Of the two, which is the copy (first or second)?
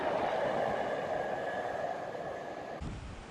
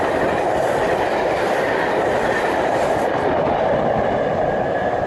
second